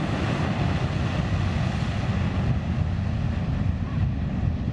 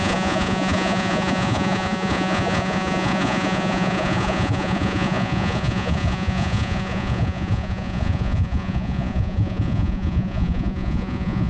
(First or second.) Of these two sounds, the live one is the first